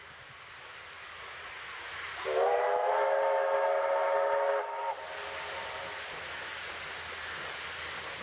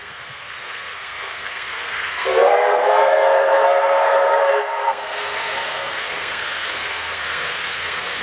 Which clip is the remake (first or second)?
second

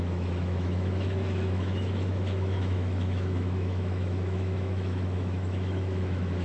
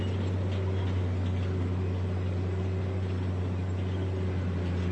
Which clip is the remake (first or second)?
first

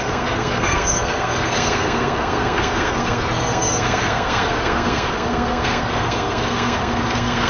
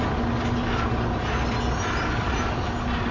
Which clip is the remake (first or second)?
first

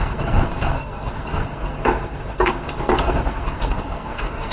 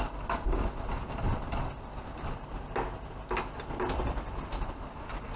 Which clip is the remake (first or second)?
first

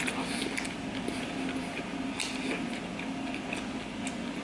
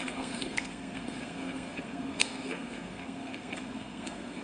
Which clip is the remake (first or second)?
second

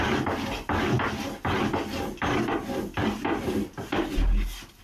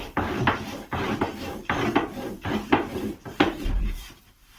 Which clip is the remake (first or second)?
second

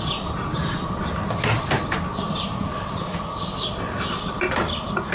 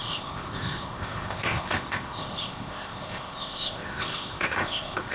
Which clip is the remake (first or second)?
second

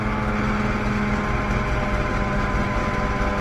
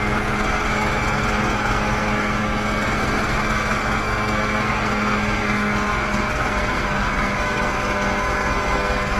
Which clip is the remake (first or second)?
second